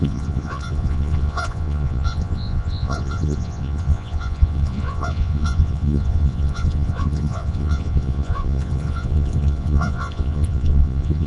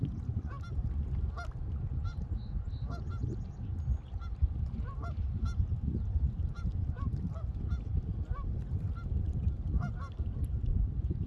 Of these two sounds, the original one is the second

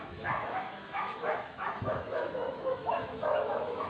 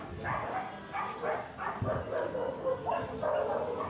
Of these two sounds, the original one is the second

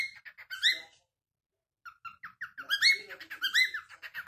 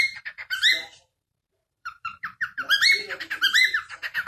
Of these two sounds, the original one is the first